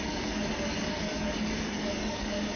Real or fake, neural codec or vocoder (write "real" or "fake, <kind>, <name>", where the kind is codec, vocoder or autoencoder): fake, codec, DAC